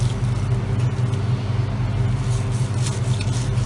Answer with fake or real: real